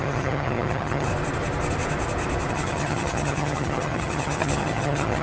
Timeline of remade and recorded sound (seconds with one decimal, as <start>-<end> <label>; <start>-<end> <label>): 0.0-1.1 remade; 1.1-2.5 recorded; 2.5-5.2 remade